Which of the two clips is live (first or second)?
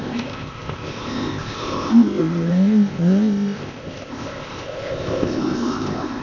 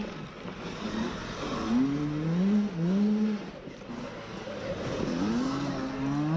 second